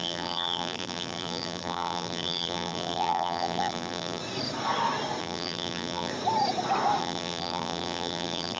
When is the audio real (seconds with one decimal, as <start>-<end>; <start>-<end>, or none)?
4.2-5.2; 6.1-7.0